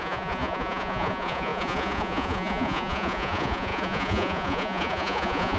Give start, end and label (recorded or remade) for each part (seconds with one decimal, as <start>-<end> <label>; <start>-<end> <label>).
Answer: 0.0-5.6 remade